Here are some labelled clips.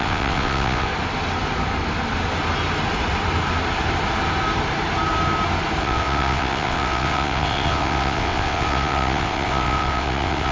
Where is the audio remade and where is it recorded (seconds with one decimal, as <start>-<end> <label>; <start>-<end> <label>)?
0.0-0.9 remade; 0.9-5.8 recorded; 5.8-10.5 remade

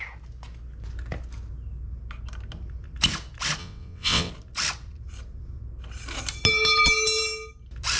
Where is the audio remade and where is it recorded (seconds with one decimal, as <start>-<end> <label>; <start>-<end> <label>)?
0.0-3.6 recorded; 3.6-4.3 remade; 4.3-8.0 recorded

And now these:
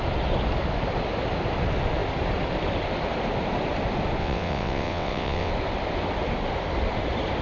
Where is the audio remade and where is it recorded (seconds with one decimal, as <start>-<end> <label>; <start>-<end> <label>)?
0.0-4.2 recorded; 4.2-5.5 remade; 5.5-7.4 recorded

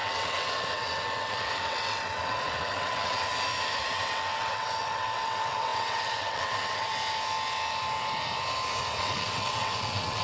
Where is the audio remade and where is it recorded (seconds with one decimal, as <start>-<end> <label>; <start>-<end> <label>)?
0.0-3.3 remade; 3.3-3.8 recorded; 3.8-6.9 remade; 6.9-9.0 recorded; 9.0-10.2 remade

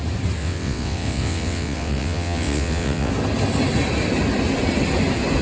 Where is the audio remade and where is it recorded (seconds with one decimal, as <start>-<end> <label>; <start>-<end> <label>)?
0.0-0.4 recorded; 0.4-3.1 remade; 3.1-5.4 recorded